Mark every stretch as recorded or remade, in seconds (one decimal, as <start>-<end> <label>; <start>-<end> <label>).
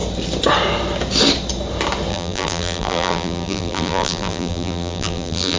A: 0.0-2.1 recorded; 2.1-5.6 remade